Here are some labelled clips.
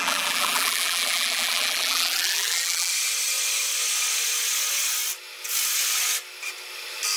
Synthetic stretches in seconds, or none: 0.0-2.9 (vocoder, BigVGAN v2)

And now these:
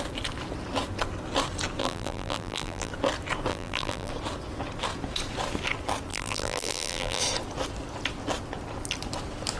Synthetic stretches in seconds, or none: 1.8-2.9 (vocoder, BigVGAN v2); 3.5-4.1; 6.1-7.2